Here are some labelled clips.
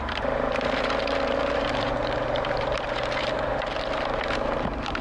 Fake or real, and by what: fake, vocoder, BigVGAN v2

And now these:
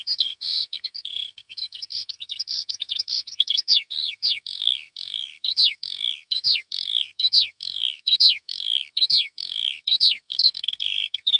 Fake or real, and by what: fake, codec, SNAC